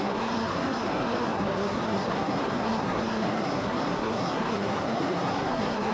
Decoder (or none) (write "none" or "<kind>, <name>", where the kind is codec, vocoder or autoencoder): codec, SNAC